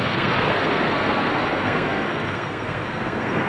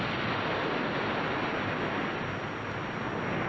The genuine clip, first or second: second